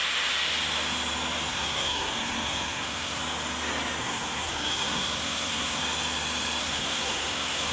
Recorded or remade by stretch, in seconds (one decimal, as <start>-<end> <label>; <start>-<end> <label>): 0.0-1.5 recorded; 1.5-3.2 remade; 3.2-4.0 recorded; 4.0-5.8 remade; 5.8-6.6 recorded; 6.6-7.7 remade